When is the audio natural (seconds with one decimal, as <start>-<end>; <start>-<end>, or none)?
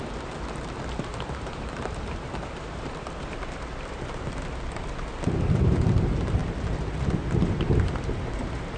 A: 0.0-1.1; 3.5-8.8